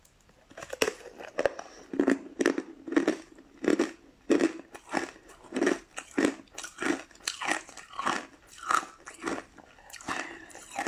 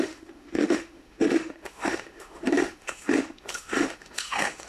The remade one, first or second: second